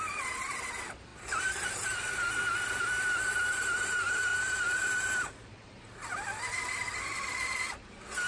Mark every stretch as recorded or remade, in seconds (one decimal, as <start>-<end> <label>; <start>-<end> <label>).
0.0-1.1 recorded; 1.1-2.3 remade; 2.3-4.3 recorded; 4.3-7.7 remade; 7.7-8.3 recorded